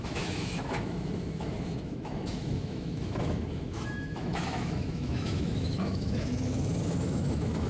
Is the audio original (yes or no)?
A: no